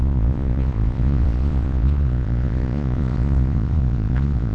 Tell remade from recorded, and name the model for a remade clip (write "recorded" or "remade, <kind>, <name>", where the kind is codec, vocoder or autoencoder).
remade, vocoder, Vocos